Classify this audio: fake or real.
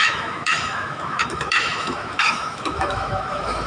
fake